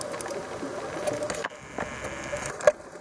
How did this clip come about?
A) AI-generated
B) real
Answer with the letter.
B